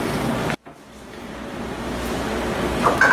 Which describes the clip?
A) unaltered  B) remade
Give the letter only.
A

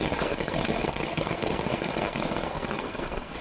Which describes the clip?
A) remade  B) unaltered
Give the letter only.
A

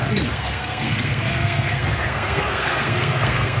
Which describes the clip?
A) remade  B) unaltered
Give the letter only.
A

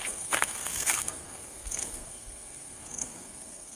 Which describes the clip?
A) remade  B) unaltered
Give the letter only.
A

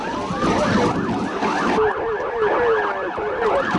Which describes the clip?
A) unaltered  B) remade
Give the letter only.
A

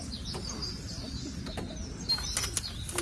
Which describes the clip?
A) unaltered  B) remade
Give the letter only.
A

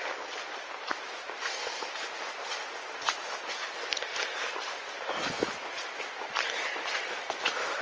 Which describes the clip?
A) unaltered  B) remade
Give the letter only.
A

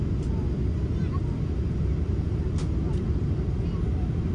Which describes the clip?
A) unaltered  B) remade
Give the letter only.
A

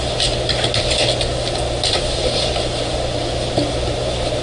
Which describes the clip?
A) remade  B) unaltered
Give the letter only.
B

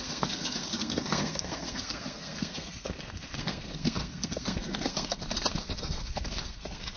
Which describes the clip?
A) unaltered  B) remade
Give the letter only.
B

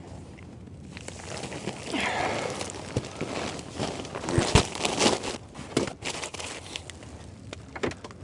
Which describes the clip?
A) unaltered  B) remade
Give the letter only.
A